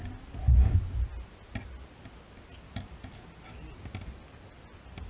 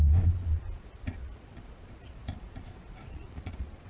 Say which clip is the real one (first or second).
first